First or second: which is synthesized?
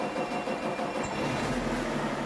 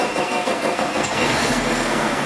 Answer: second